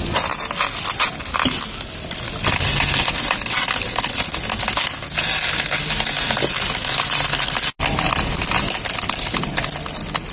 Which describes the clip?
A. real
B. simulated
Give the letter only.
A